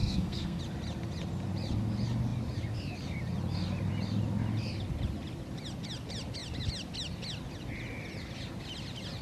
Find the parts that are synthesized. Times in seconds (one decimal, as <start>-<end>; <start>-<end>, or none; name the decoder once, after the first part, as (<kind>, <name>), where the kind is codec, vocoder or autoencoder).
0.0-0.6 (codec, SNAC)